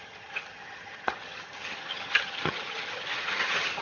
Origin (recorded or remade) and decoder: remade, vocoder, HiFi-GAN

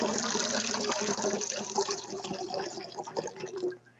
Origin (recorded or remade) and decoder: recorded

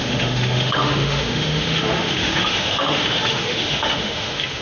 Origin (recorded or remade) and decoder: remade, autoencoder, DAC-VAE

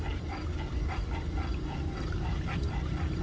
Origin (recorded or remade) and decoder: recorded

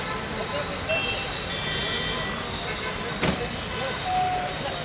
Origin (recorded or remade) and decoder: recorded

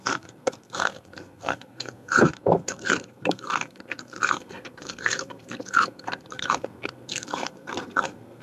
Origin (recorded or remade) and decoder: remade, codec, SNAC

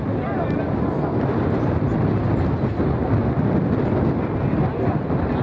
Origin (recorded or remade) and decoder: recorded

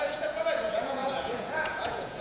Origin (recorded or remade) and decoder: remade, vocoder, Vocos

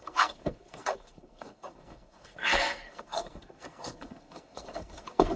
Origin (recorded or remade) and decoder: remade, codec, SNAC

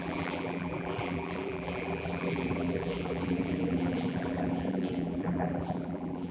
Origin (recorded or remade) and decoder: remade, vocoder, BigVGAN v2